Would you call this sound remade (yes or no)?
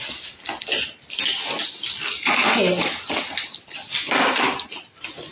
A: no